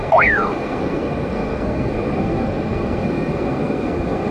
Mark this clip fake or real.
fake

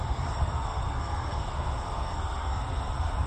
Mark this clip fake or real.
fake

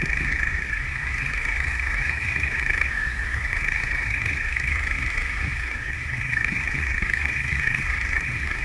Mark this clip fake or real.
fake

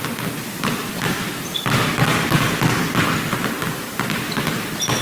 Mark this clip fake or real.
real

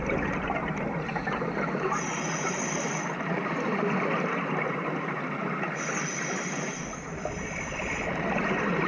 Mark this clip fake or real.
real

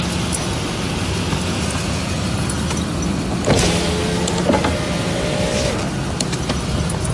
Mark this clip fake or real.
real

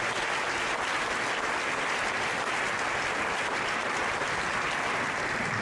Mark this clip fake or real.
real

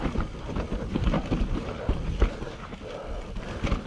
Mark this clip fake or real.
real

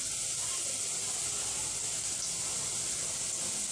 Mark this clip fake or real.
real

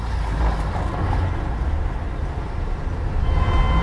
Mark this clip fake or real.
real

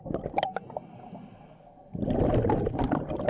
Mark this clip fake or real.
real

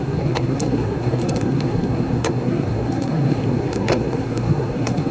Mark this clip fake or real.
fake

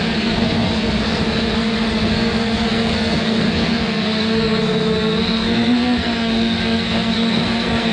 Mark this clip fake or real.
fake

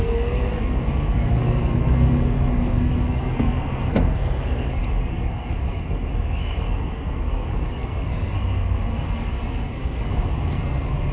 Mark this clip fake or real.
fake